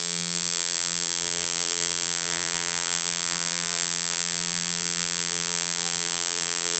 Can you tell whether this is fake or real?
fake